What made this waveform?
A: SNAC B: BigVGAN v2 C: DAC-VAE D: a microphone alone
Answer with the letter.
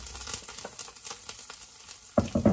B